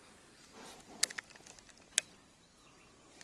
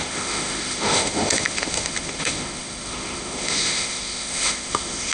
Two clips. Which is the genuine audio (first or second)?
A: first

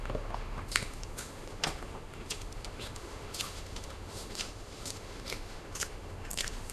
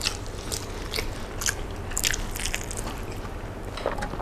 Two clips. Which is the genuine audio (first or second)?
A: second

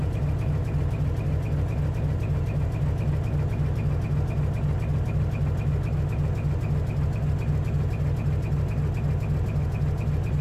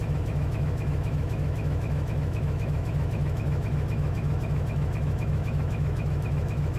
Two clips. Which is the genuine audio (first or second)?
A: first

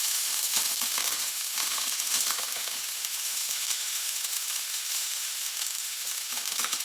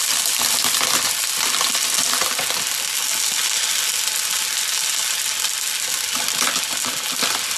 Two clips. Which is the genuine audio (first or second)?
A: second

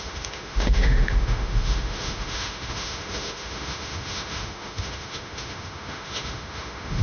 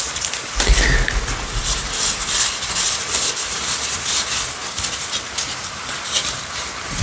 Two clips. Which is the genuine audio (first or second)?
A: second